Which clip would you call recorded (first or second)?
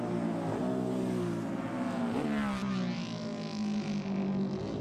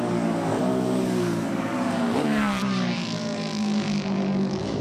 first